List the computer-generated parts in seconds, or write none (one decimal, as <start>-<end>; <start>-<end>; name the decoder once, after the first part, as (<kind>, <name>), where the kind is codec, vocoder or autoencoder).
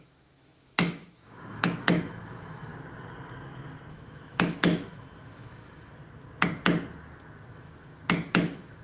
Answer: 0.0-2.7 (autoencoder, DAC-VAE); 3.9-6.0; 7.5-8.8